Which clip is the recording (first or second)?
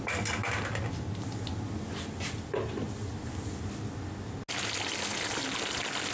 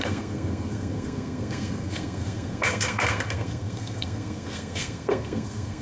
first